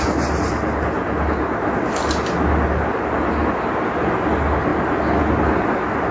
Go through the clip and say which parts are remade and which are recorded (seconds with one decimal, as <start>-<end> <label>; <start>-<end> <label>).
0.0-6.1 recorded